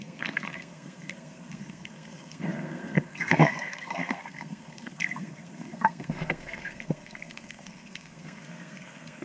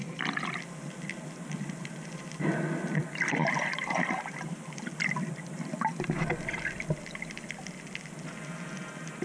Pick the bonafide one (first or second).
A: second